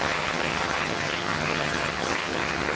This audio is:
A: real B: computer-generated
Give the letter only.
B